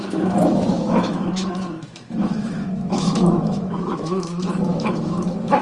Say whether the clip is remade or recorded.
remade